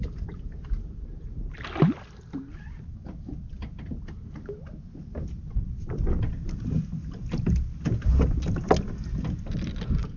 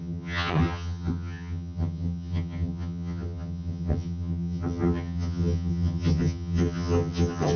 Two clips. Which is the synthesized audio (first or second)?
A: second